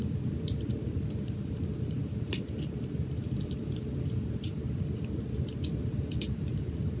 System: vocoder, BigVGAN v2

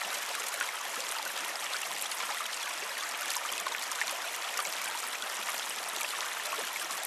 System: none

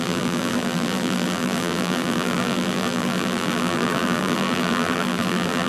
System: vocoder, BigVGAN v2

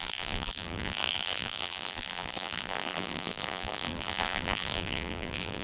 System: vocoder, BigVGAN v2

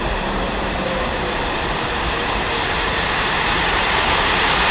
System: vocoder, BigVGAN v2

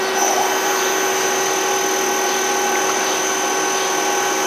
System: none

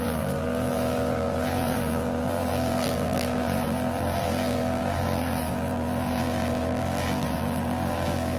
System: vocoder, BigVGAN v2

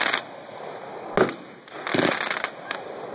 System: none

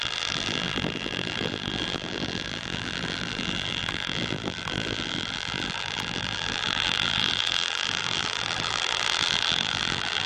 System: vocoder, BigVGAN v2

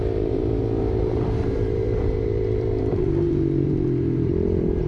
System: vocoder, BigVGAN v2